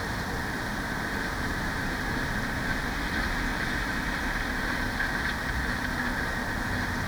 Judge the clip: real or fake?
real